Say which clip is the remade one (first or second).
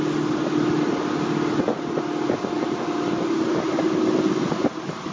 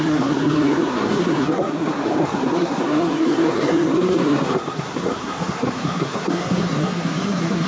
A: second